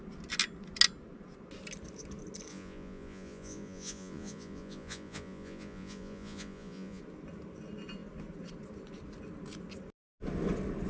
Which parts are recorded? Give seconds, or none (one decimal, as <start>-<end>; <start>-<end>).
0.0-2.5; 7.0-10.9